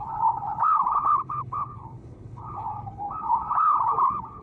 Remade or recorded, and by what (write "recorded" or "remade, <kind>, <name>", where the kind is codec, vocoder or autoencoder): remade, codec, HILCodec